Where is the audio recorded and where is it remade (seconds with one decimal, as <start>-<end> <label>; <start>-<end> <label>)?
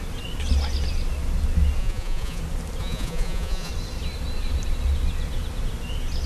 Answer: 0.0-1.8 recorded; 1.8-2.4 remade; 2.4-2.8 recorded; 2.8-3.7 remade; 3.7-6.3 recorded